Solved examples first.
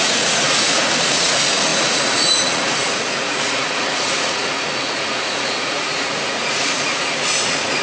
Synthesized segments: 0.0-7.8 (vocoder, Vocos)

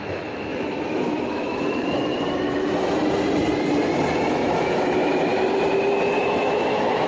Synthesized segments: 0.0-2.1 (autoencoder, DAC-VAE); 4.3-5.3; 6.2-7.1

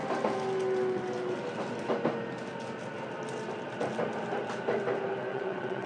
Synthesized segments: 5.3-5.9 (vocoder, WaveNeXt)

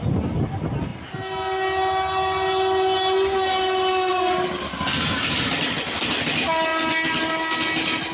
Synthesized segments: none

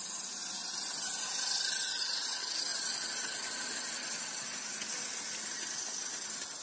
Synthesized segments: none